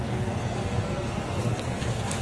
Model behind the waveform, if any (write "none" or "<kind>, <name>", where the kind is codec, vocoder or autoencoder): codec, SNAC